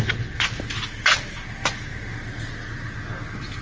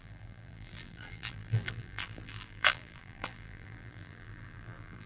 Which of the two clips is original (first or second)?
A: first